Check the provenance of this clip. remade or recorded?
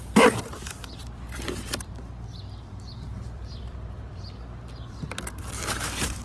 remade